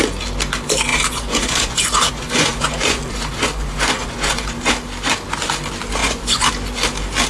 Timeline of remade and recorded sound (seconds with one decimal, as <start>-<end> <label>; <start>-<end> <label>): 0.0-0.9 recorded; 0.9-4.7 remade; 4.7-6.0 recorded; 6.0-6.5 remade; 6.5-7.3 recorded